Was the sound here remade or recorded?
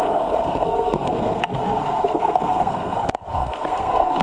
remade